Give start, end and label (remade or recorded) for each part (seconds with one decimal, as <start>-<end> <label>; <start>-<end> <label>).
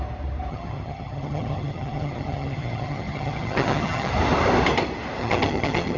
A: 0.0-0.5 recorded; 0.5-4.1 remade; 4.1-5.2 recorded; 5.2-6.0 remade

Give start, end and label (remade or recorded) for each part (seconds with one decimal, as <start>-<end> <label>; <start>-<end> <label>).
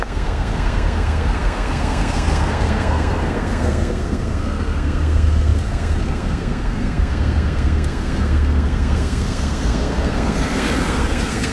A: 0.0-11.5 remade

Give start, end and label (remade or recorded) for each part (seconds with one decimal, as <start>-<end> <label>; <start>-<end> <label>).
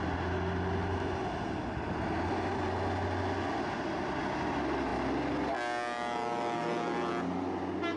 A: 0.0-8.0 recorded